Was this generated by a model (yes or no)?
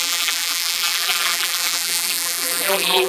yes